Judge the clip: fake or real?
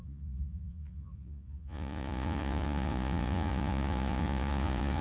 fake